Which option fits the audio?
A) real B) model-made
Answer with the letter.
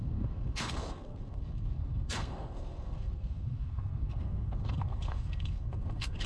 B